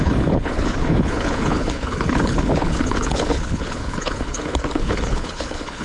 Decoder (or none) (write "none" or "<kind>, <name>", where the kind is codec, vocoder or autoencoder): codec, HILCodec